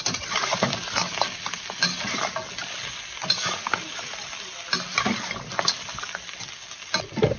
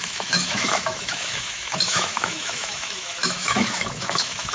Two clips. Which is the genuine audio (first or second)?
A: first